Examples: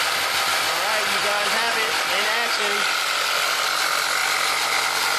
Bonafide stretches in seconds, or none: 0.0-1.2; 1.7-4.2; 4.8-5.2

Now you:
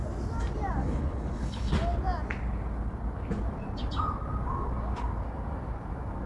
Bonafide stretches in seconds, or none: 0.0-0.8; 1.7-6.3

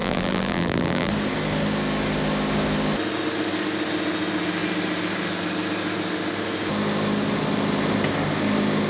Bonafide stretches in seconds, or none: 1.1-8.9